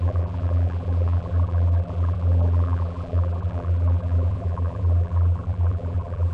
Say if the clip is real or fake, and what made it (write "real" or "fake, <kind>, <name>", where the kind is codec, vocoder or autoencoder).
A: fake, vocoder, BigVGAN v2